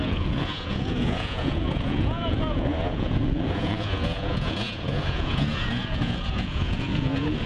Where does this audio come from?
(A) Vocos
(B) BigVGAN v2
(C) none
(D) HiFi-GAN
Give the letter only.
A